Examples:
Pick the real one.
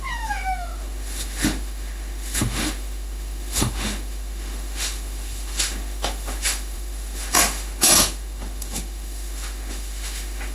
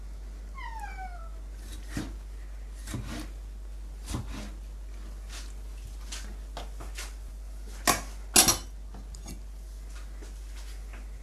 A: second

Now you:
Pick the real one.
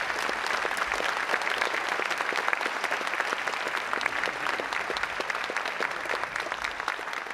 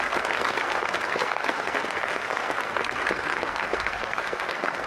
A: first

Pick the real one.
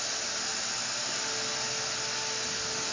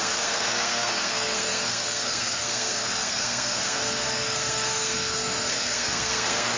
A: first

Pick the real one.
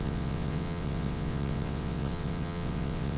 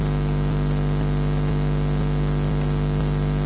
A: second